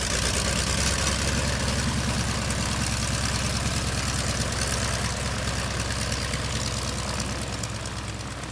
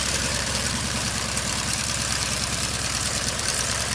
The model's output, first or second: second